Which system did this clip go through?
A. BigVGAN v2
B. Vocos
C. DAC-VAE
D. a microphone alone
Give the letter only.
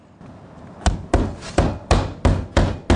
D